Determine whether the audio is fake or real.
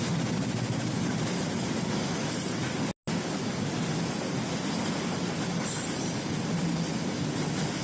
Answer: real